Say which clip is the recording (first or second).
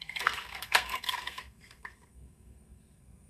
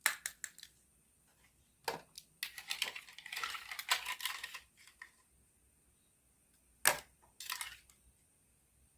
second